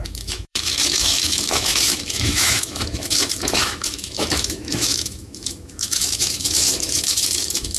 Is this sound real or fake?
fake